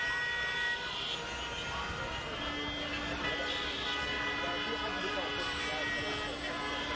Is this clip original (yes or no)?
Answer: yes